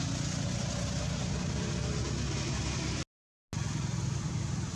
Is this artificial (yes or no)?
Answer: no